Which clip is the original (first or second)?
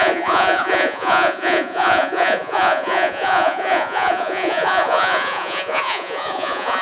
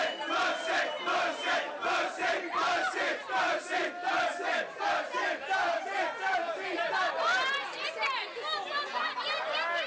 second